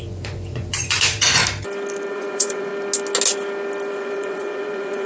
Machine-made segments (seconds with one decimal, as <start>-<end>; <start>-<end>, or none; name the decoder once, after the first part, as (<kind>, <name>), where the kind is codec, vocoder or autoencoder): 0.0-1.4 (vocoder, Vocos); 2.1-2.7; 3.9-5.1